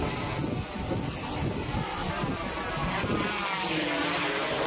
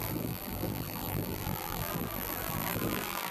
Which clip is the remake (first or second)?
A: second